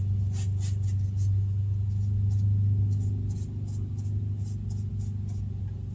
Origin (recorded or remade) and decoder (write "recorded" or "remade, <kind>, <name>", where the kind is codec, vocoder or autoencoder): recorded